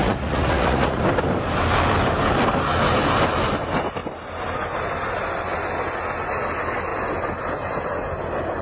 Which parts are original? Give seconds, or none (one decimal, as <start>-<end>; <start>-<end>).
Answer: 1.0-8.6